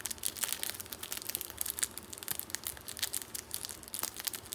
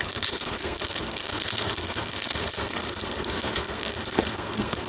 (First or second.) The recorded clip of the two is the first